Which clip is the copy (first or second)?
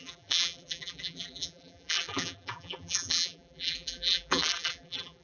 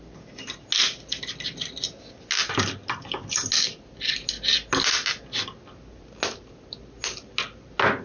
first